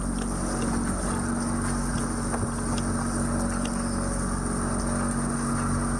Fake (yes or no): no